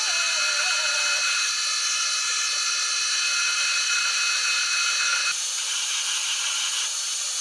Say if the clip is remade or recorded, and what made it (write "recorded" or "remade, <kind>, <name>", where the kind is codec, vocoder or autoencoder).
recorded